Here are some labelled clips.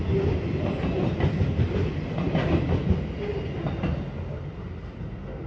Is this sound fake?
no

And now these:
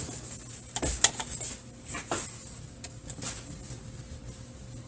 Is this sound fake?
no